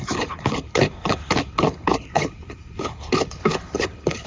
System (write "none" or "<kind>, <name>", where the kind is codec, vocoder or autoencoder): codec, HILCodec